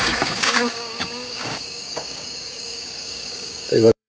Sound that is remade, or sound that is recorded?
remade